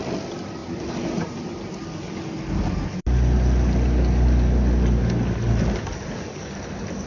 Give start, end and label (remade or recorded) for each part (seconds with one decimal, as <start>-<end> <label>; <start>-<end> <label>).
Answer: 0.0-0.6 recorded; 0.6-1.7 remade; 1.7-7.1 recorded